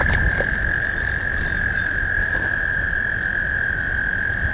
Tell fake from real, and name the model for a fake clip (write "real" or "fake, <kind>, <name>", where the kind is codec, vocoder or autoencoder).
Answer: real